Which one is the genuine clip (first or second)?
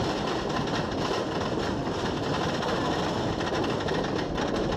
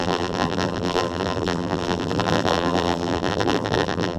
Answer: first